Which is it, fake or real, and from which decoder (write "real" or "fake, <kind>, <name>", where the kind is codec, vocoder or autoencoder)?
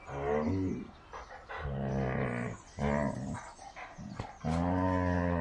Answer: real